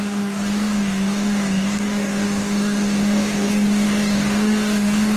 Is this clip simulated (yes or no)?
yes